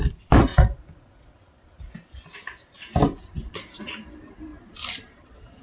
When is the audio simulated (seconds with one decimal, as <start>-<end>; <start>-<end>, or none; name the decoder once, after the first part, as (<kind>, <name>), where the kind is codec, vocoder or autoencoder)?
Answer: 0.0-0.5 (vocoder, BigVGAN v2); 3.5-5.6